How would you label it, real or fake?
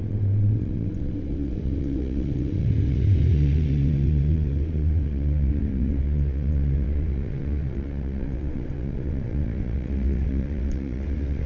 fake